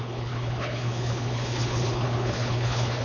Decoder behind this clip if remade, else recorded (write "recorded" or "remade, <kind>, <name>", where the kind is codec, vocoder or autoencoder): remade, codec, HILCodec